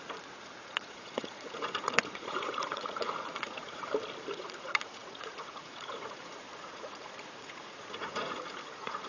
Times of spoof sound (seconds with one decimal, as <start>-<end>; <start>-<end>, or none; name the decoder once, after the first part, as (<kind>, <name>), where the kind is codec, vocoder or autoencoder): 0.0-3.8 (vocoder, Vocos); 4.3-9.1